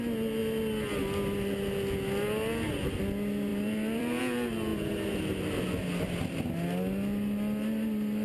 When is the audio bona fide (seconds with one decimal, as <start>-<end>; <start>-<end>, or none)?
0.0-3.5; 4.2-8.2